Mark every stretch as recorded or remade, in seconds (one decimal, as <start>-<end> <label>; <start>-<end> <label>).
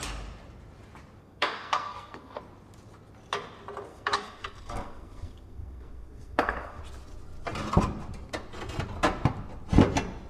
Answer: 0.0-1.2 recorded; 1.2-2.4 remade; 2.4-3.9 recorded; 3.9-6.8 remade; 6.8-10.3 recorded